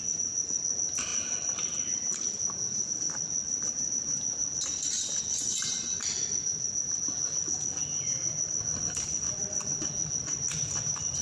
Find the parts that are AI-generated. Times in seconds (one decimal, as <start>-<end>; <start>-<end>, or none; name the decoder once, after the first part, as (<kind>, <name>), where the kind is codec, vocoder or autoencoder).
none